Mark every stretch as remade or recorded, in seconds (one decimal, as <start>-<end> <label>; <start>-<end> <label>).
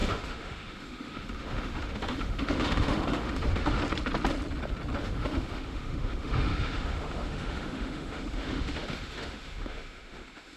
0.0-3.8 remade; 3.8-5.0 recorded; 5.0-10.6 remade